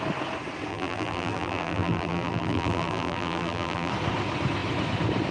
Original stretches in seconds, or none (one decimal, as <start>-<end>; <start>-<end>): 0.0-0.7; 3.9-5.3